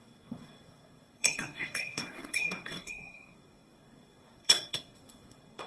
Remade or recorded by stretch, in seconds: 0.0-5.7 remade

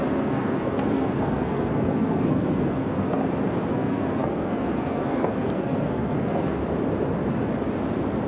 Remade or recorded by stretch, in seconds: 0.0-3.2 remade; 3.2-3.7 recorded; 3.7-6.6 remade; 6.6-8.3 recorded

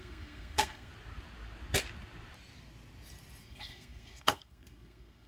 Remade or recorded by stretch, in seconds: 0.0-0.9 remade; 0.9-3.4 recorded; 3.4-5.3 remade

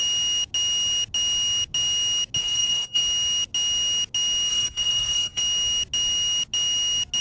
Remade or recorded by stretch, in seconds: 0.0-2.4 recorded; 2.4-3.0 remade; 3.0-4.5 recorded; 4.5-5.4 remade; 5.4-7.2 recorded